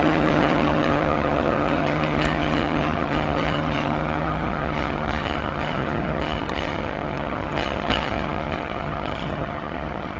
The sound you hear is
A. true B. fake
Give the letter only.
B